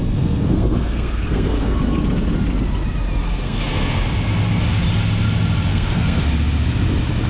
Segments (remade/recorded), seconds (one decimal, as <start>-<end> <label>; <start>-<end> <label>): 0.0-1.8 remade; 1.8-3.2 recorded; 3.2-4.0 remade; 4.0-5.7 recorded; 5.7-6.2 remade; 6.2-7.3 recorded